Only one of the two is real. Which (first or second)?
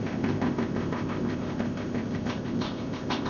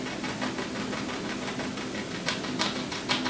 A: second